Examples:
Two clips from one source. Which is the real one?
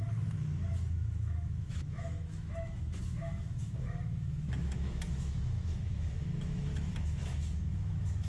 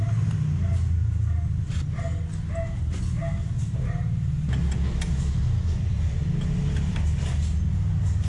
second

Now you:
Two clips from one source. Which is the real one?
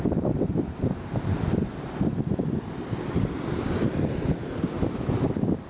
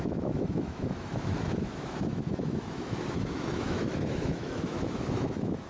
first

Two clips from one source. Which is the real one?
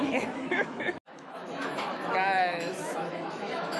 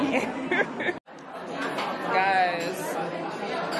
second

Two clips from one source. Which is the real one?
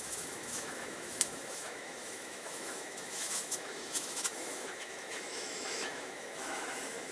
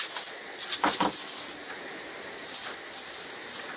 second